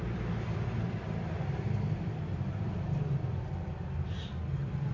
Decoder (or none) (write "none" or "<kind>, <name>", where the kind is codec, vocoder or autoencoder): vocoder, BigVGAN v2